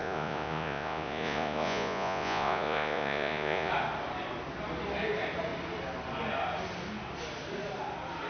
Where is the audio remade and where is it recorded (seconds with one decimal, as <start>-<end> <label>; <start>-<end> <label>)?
0.0-3.7 remade; 3.7-8.3 recorded